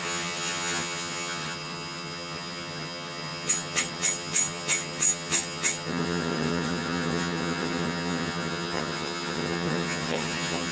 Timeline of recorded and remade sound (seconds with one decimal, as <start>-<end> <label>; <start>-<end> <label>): 0.0-10.7 remade